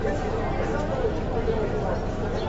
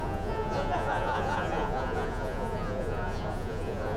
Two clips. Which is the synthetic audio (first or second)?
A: second